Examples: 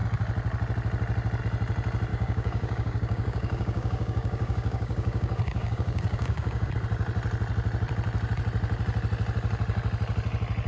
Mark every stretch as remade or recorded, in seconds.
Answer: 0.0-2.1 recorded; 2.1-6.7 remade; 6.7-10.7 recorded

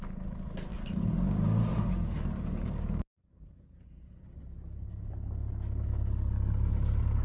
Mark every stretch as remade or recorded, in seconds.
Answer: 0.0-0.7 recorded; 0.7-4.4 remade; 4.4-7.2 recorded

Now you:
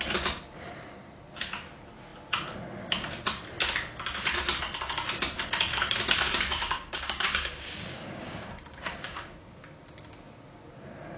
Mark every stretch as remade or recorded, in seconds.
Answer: 0.0-5.7 recorded; 5.7-9.6 remade; 9.6-11.2 recorded